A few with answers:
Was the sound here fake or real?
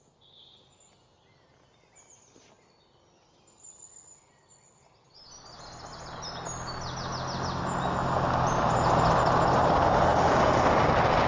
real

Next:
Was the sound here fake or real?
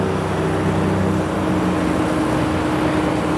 real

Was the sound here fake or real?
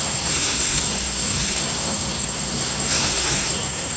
fake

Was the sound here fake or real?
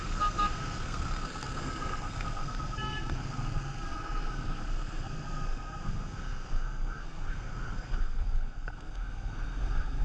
fake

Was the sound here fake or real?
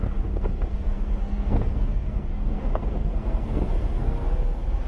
fake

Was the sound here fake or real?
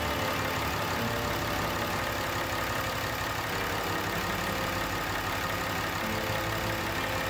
real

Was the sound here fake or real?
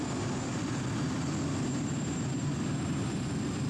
real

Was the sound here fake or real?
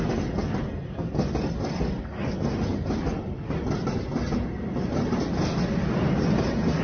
real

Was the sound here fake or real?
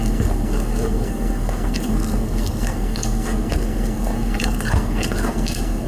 fake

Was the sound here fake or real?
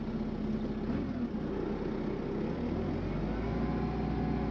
real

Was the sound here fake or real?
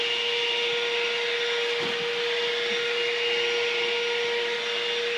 real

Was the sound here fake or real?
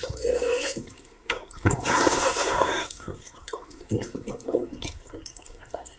fake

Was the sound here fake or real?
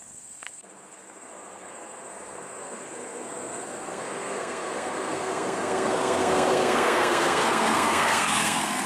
fake